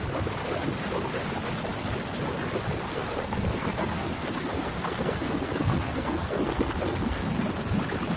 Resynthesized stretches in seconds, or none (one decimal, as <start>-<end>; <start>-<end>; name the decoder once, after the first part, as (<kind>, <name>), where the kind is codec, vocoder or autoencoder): 2.9-7.4 (codec, SNAC)